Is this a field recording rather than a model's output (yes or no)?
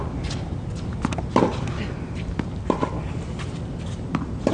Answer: yes